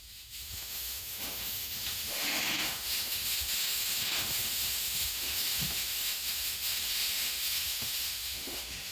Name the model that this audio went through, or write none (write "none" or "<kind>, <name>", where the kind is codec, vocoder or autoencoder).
autoencoder, DAC-VAE